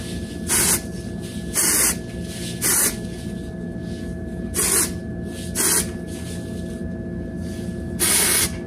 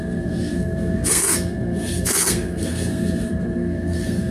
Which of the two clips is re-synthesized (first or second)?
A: second